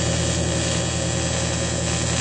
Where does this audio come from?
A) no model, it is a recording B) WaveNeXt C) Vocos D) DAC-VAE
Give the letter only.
A